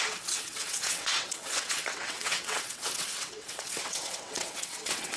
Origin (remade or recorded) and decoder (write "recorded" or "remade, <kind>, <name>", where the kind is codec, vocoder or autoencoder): remade, vocoder, WaveNeXt